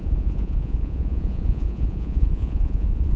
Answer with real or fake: fake